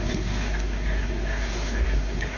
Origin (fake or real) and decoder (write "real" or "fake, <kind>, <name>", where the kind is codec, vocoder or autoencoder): fake, codec, SNAC